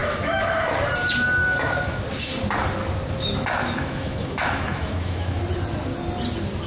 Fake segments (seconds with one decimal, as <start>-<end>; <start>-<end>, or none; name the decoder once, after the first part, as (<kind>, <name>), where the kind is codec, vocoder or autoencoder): 0.0-0.7 (autoencoder, DAC-VAE); 1.4-2.0; 3.6-5.4